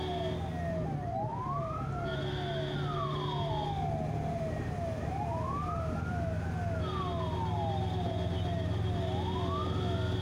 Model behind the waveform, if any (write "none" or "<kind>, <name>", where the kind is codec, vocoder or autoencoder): none